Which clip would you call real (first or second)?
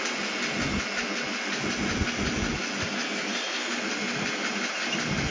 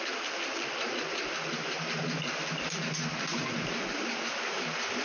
first